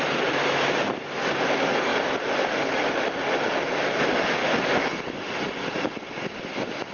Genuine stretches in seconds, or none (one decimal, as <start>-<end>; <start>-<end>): 0.0-6.9